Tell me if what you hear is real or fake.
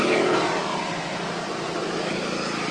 real